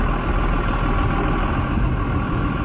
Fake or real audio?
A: real